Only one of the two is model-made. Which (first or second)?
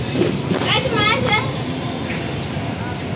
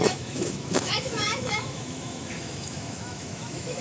second